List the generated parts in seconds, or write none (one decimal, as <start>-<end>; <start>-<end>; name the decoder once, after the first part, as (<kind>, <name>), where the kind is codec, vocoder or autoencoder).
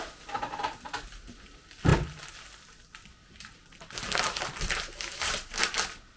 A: none